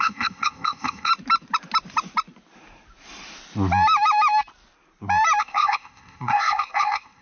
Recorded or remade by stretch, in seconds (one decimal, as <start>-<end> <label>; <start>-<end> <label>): 0.0-1.1 remade; 1.1-5.4 recorded; 5.4-7.2 remade